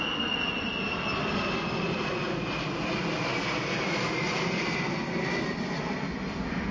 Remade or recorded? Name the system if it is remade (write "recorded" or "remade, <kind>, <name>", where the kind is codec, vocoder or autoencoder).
recorded